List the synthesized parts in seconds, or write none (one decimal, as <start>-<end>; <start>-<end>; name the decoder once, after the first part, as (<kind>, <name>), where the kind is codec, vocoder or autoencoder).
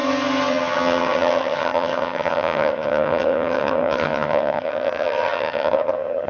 0.5-6.3 (vocoder, HiFi-GAN)